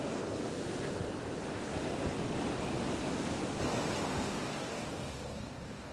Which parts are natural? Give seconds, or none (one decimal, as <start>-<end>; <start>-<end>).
0.5-4.0